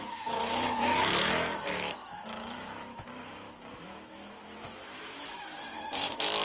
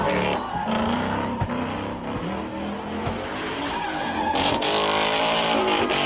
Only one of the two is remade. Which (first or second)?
first